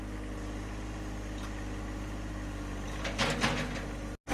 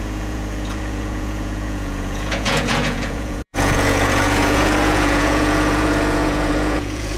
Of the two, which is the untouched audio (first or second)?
first